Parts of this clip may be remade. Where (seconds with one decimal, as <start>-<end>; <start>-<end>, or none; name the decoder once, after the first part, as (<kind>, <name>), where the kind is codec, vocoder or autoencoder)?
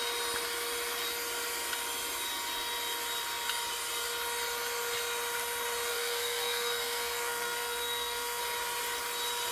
5.9-8.4 (codec, SNAC)